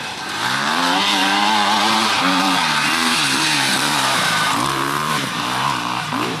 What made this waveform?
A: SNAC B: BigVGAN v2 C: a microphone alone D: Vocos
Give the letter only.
B